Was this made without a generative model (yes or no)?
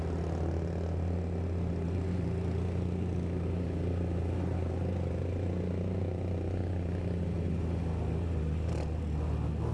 yes